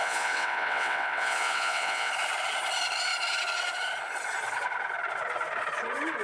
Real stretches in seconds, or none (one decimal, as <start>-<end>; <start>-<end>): 2.1-6.2

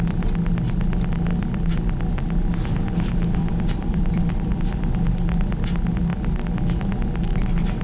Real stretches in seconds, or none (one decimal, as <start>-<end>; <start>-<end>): 0.0-3.4; 4.6-7.8

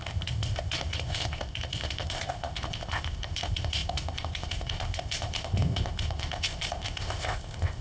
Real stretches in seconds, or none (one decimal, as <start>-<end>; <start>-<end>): none

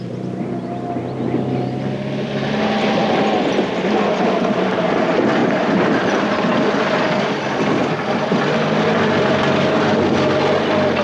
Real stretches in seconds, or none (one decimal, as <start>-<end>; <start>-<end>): 0.0-11.0

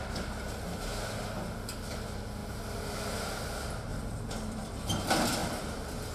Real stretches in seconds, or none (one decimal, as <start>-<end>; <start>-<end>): 0.0-3.9; 4.9-5.4

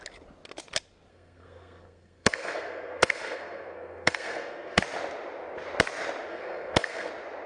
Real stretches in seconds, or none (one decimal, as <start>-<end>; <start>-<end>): 0.0-1.1; 4.8-6.3; 7.1-7.5